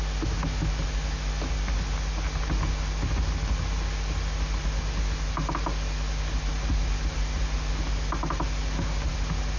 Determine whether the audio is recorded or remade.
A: recorded